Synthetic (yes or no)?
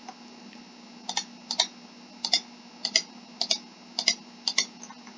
no